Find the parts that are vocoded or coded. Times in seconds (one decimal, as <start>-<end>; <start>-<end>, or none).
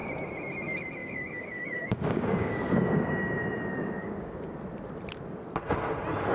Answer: 1.0-2.5; 4.0-4.5